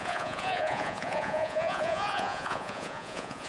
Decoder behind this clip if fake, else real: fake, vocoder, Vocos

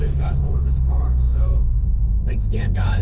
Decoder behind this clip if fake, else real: fake, autoencoder, DAC-VAE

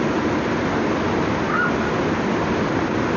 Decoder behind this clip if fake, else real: real